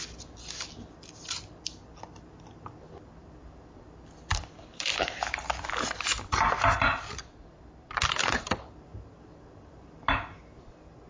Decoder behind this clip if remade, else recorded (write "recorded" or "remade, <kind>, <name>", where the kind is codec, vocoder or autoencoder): recorded